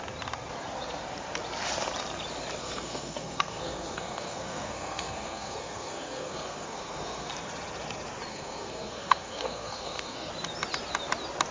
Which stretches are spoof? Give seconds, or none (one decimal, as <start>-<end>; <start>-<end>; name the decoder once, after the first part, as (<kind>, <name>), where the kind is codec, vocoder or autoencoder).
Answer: 2.6-7.3 (codec, SNAC); 8.3-10.3